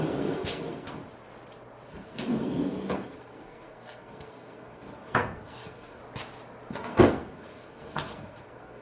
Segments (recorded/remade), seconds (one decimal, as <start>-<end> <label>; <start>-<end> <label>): 0.0-1.0 remade; 1.0-1.9 recorded; 1.9-6.0 remade; 6.0-6.7 recorded; 6.7-8.8 remade